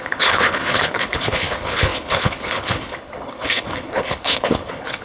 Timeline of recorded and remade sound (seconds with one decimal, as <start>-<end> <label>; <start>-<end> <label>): 0.0-5.0 remade